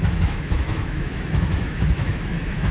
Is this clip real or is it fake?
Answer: fake